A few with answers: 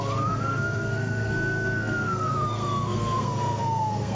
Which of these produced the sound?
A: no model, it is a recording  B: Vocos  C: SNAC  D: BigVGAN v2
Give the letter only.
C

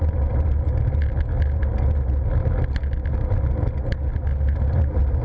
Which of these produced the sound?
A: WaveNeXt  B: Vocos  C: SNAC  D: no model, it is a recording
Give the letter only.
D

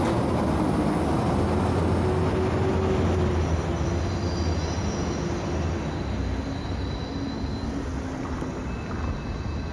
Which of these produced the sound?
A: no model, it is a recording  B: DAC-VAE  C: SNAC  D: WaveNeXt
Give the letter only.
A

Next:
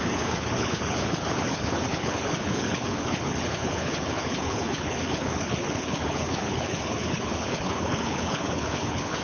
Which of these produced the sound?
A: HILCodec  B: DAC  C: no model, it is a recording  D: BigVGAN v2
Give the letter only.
A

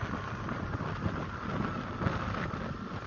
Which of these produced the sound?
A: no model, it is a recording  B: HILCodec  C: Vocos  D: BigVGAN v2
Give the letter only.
A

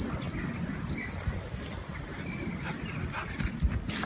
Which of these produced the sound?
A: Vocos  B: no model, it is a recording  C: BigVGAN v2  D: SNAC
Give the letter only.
B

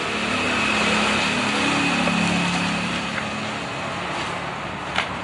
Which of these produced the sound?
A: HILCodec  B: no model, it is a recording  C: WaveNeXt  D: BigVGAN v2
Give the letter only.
B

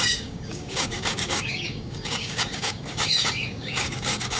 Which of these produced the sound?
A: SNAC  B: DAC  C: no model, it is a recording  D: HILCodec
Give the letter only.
B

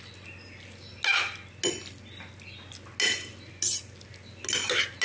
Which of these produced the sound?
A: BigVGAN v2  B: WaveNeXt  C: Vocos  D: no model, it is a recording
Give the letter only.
D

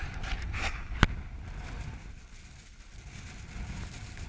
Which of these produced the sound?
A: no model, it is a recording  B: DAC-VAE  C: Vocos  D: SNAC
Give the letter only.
A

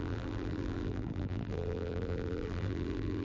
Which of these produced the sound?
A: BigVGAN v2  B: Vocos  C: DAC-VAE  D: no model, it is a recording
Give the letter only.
A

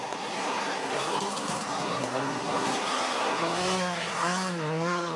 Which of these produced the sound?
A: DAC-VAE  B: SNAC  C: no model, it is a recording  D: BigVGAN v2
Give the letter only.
B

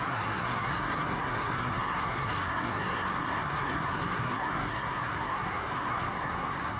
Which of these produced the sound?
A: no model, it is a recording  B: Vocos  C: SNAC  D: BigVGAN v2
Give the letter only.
C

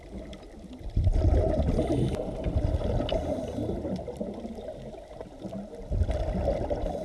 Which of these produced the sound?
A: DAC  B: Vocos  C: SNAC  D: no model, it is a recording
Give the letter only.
D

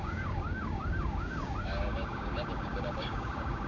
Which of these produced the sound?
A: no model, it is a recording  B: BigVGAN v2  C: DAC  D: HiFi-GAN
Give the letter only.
C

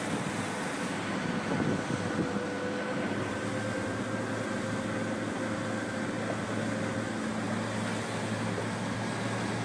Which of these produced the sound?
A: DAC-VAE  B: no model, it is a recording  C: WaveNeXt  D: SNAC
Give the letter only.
B